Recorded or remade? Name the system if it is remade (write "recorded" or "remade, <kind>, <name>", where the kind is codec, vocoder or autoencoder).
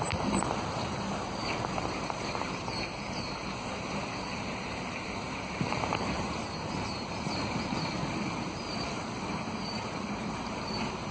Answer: remade, vocoder, BigVGAN v2